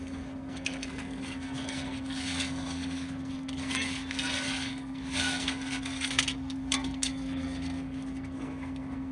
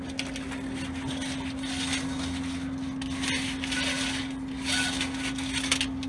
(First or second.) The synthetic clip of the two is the first